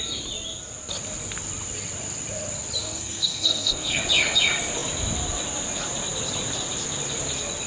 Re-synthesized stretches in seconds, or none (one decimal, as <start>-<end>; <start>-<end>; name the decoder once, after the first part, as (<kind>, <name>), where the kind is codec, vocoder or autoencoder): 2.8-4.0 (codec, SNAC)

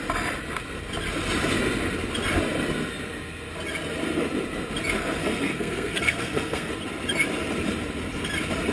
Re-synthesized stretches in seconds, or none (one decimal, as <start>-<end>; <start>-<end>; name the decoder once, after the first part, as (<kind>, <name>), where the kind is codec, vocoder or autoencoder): 5.2-6.7 (codec, SNAC)

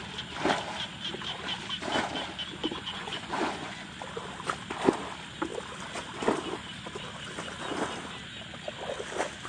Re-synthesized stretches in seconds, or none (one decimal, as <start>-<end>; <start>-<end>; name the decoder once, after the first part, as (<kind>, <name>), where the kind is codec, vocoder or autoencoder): 2.6-3.9 (vocoder, Vocos)

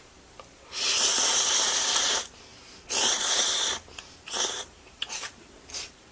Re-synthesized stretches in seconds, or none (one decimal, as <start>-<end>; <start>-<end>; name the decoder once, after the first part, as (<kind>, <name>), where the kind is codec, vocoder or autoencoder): 0.0-6.1 (vocoder, BigVGAN v2)

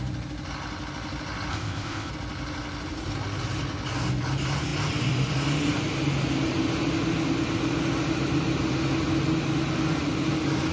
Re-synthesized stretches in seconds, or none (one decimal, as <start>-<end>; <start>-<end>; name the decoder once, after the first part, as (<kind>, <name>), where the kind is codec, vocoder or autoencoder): 1.5-2.1 (codec, ZipCodec)

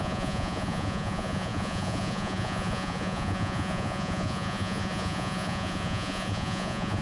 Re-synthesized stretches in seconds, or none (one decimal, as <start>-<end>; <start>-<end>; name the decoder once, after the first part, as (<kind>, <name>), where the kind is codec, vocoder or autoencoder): 0.0-7.0 (vocoder, Vocos)